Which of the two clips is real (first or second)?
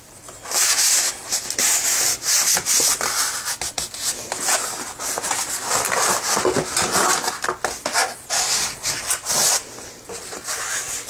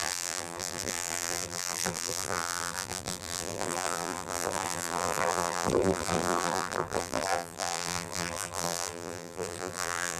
first